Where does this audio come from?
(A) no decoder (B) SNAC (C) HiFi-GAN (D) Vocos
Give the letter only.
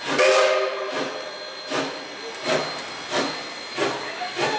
A